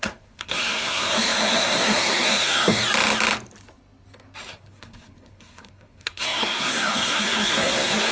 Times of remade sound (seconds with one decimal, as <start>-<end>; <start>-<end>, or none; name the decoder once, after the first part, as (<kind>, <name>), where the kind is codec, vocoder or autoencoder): 0.0-2.8 (codec, SNAC); 4.5-8.1